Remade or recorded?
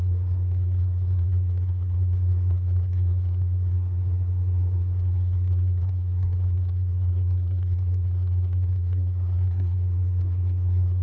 remade